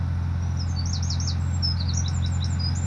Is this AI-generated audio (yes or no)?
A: no